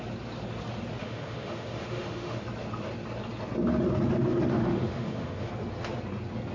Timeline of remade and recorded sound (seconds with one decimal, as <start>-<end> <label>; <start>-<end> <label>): 0.0-1.0 recorded; 1.0-2.4 remade; 2.4-4.5 recorded; 4.5-5.5 remade; 5.5-6.5 recorded